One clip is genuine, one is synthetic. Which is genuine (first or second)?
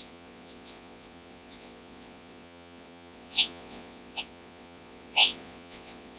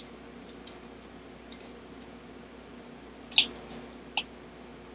second